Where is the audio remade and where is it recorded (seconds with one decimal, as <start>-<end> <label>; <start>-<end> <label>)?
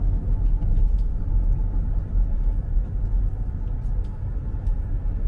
0.0-5.3 recorded